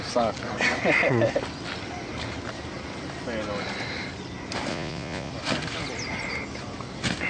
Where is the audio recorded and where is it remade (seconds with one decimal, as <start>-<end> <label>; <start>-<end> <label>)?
0.0-4.7 recorded; 4.7-5.3 remade; 5.3-7.3 recorded